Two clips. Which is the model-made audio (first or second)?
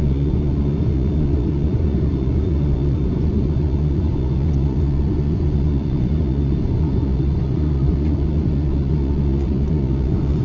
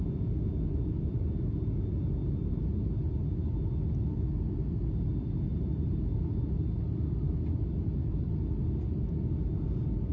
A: first